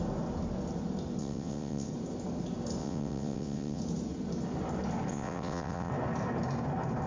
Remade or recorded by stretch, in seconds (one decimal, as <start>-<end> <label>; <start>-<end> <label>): 0.0-1.2 recorded; 1.2-1.9 remade; 1.9-2.8 recorded; 2.8-3.8 remade; 3.8-5.1 recorded; 5.1-5.9 remade; 5.9-7.1 recorded